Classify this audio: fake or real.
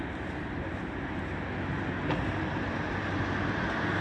real